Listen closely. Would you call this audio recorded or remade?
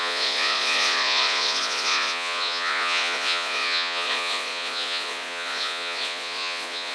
remade